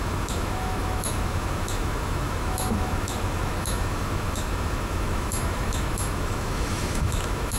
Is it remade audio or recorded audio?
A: remade